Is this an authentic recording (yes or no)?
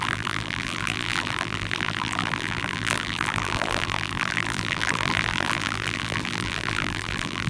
no